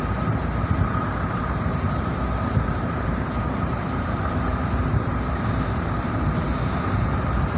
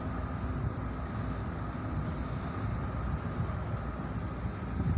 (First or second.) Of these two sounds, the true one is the second